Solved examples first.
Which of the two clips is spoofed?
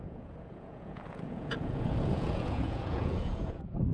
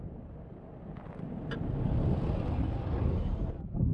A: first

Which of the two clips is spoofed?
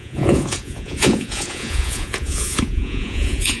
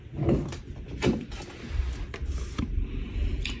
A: first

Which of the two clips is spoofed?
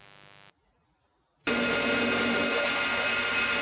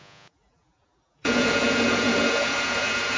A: second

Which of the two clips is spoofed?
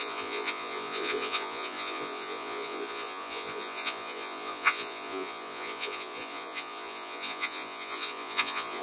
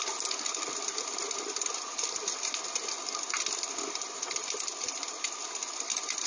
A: first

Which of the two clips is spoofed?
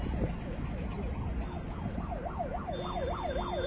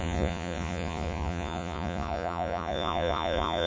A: second